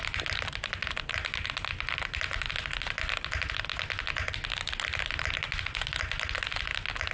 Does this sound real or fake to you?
real